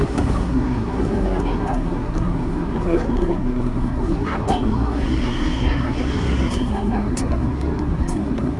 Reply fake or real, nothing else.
fake